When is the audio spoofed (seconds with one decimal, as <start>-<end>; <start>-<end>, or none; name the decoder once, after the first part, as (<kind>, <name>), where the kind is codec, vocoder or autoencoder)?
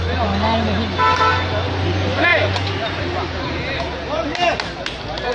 none